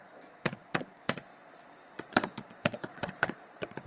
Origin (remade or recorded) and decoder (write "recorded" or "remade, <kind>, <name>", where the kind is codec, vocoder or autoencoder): remade, vocoder, Vocos